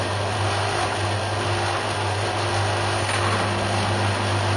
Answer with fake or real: real